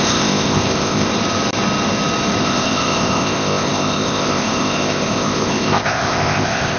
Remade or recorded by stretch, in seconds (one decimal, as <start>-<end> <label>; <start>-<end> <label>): 0.0-1.1 remade; 1.1-2.4 recorded; 2.4-6.8 remade